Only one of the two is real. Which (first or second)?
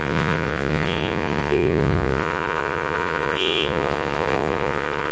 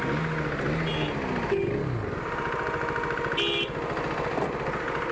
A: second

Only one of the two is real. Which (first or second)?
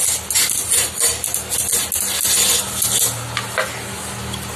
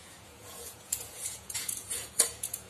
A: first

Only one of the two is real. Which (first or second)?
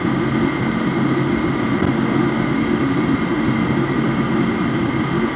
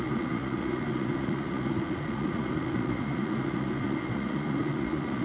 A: first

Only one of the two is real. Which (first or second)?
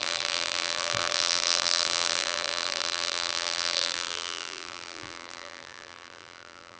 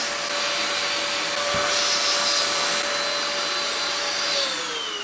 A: second